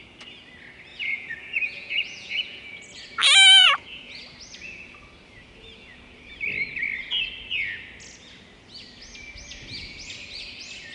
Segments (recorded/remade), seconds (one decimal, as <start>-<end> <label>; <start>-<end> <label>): 0.0-0.9 recorded; 0.9-2.8 remade; 2.8-3.6 recorded; 3.6-4.2 remade; 4.2-10.9 recorded